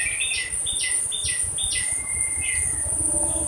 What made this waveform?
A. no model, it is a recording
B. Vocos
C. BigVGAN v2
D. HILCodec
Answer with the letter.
A